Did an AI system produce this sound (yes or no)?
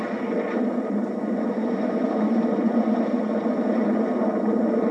yes